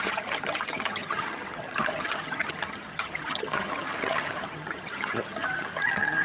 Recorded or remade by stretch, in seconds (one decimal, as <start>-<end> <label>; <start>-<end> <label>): 0.0-6.2 remade